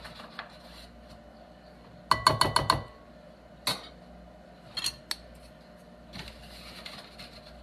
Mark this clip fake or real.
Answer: real